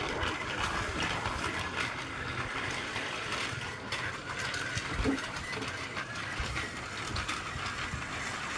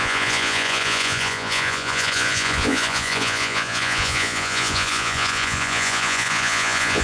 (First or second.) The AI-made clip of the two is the second